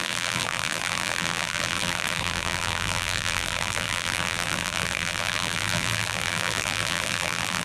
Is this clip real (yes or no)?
no